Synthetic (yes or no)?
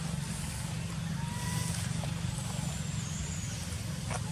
no